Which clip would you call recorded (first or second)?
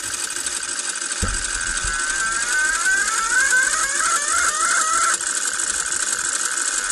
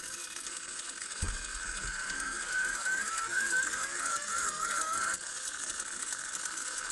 first